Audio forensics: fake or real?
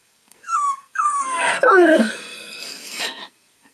fake